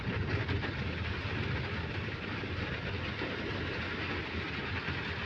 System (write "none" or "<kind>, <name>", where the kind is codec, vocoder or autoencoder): none